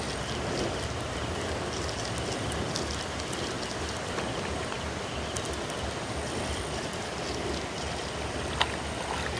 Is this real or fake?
real